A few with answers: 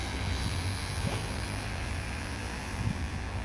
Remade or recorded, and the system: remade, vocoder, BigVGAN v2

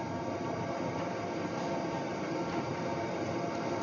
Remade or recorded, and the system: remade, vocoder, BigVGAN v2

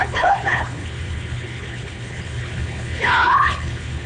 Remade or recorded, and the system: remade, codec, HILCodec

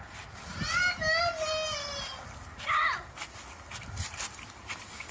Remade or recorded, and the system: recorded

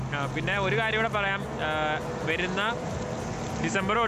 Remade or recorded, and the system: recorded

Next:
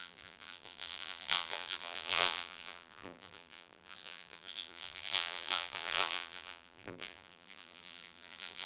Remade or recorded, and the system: remade, vocoder, BigVGAN v2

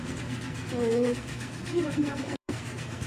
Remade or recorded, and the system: remade, codec, SNAC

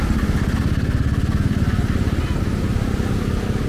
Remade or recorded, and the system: recorded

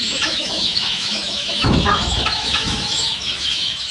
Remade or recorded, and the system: remade, autoencoder, DAC-VAE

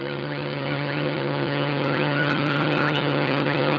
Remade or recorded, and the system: remade, vocoder, HiFi-GAN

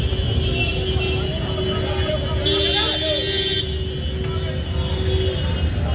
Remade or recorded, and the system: recorded